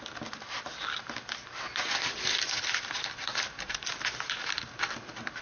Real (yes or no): yes